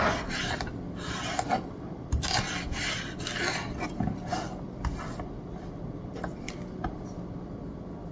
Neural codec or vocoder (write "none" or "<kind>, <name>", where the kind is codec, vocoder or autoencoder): none